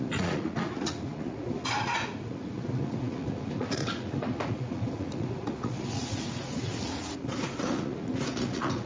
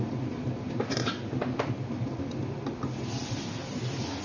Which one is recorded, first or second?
second